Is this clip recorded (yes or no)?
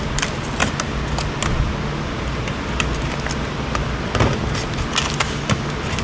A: yes